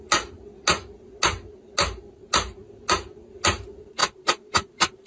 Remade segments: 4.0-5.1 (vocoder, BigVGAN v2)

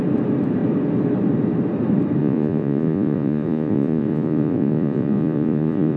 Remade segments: 2.2-6.0 (vocoder, Vocos)

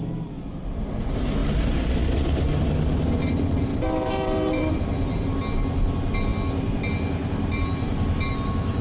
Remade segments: 3.7-4.7 (vocoder, BigVGAN v2)

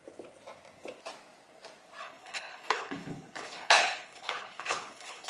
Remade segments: 2.0-5.3 (codec, HILCodec)

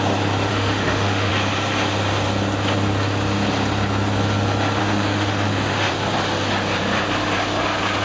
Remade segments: 0.5-1.3 (autoencoder, DAC-VAE); 4.8-5.9

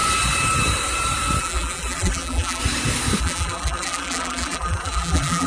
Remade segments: 1.4-2.6 (vocoder, BigVGAN v2); 3.2-5.5

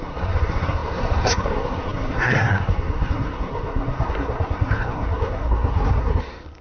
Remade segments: 0.0-6.6 (codec, SNAC)

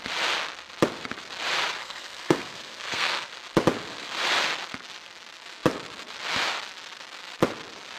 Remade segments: 1.8-3.3 (codec, SNAC)